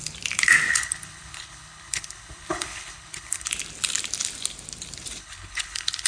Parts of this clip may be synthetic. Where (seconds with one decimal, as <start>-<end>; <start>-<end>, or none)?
0.7-3.5; 5.2-6.1